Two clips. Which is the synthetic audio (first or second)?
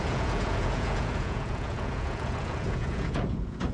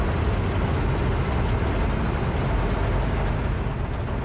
first